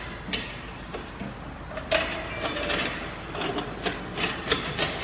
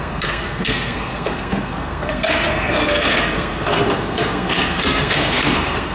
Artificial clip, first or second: second